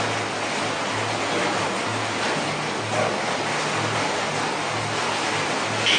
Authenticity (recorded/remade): recorded